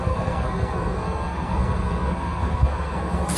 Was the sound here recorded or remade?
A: remade